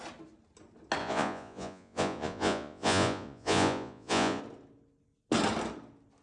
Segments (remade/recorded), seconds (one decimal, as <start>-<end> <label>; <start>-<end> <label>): 0.0-1.0 recorded; 1.0-4.4 remade; 4.4-6.2 recorded